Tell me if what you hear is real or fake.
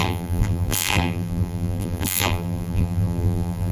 fake